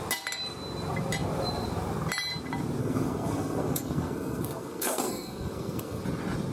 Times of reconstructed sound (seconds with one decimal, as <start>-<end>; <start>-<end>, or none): 2.8-6.0